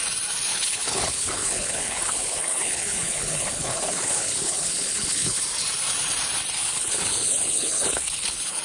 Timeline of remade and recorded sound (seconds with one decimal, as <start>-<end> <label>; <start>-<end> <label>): 0.0-0.5 recorded; 0.5-5.4 remade; 5.4-6.6 recorded; 6.6-8.6 remade